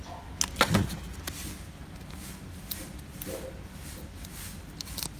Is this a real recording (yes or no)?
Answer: yes